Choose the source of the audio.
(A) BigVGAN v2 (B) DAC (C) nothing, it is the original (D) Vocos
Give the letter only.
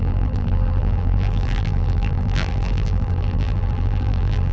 A